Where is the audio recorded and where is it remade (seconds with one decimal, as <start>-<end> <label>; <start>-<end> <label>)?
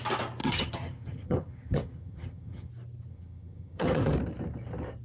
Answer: 0.0-0.4 recorded; 0.4-2.7 remade; 2.7-3.1 recorded; 3.1-4.1 remade; 4.1-5.0 recorded